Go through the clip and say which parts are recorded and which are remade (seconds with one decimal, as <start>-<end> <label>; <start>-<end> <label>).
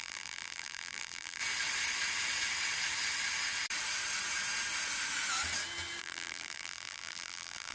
0.0-1.4 remade; 1.4-6.0 recorded; 6.0-7.7 remade